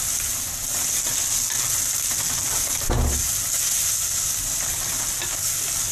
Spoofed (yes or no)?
no